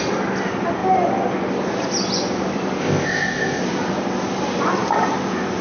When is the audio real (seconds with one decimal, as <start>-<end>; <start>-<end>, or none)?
0.0-2.8; 3.6-5.6